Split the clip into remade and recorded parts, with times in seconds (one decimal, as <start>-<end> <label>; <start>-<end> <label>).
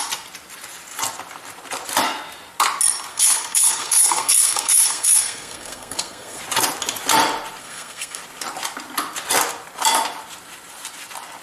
0.0-3.1 recorded; 3.1-6.4 remade; 6.4-7.6 recorded; 7.6-8.2 remade; 8.2-11.4 recorded